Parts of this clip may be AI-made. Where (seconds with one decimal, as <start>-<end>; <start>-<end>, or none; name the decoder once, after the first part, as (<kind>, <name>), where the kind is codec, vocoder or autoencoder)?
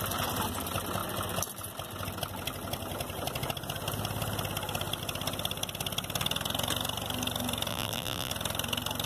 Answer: 7.7-8.3 (vocoder, BigVGAN v2)